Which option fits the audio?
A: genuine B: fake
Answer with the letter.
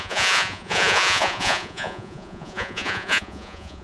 B